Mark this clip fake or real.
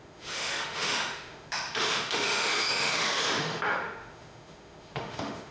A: fake